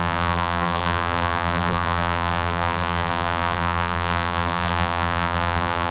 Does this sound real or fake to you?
fake